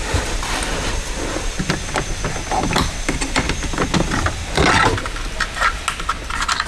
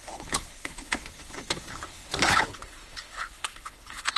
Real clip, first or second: first